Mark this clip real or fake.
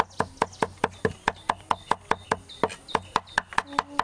real